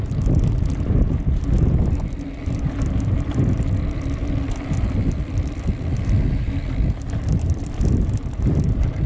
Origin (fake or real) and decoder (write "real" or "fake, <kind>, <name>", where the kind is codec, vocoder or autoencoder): real